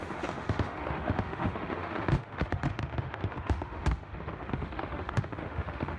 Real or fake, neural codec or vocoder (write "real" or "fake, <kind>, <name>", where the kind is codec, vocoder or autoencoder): fake, autoencoder, DAC-VAE